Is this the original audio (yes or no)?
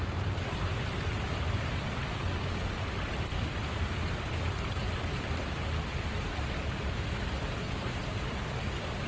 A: no